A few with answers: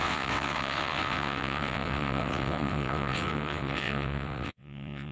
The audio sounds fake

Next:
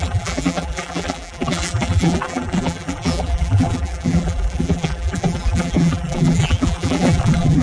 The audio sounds fake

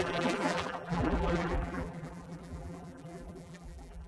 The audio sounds fake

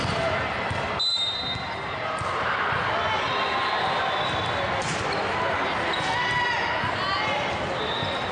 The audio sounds real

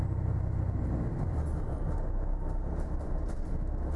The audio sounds real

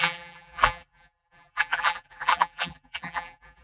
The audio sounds fake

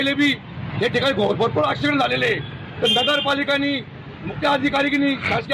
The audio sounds real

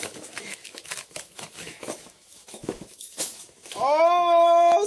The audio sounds fake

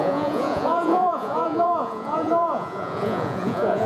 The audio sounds fake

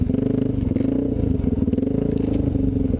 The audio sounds real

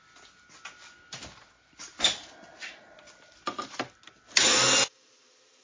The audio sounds real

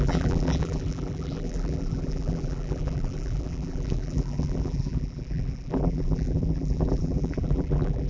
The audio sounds fake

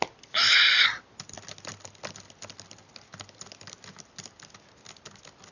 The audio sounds real